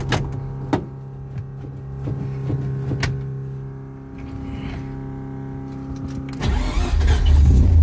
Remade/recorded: recorded